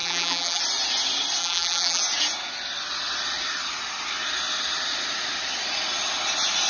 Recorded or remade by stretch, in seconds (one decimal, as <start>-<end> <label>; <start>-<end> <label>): 0.0-0.6 remade; 0.6-1.4 recorded; 1.4-2.0 remade; 2.0-6.7 recorded